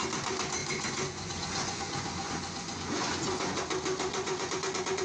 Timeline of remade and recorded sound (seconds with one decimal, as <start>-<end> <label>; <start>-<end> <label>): 0.0-0.6 recorded; 0.6-3.6 remade; 3.6-4.1 recorded; 4.1-5.0 remade

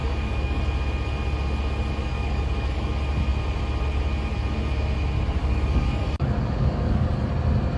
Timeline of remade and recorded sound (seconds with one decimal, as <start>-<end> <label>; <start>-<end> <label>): 0.0-0.6 remade; 0.6-2.0 recorded; 2.0-2.9 remade; 2.9-5.4 recorded; 5.4-7.3 remade; 7.3-7.8 recorded